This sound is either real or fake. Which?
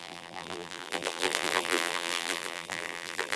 fake